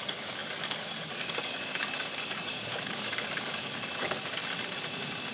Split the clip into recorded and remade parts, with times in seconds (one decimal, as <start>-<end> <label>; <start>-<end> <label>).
0.0-4.4 remade; 4.4-5.3 recorded